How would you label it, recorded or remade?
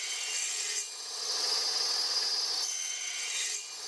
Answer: remade